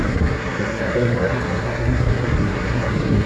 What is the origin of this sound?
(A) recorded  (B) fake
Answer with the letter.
B